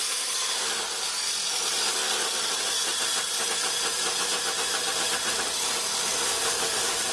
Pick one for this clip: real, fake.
real